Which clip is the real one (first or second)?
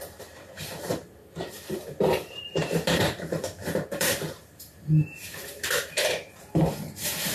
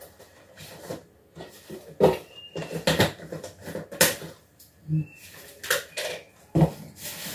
second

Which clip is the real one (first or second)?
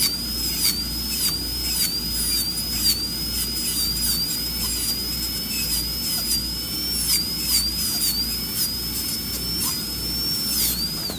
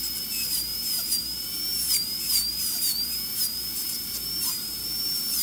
first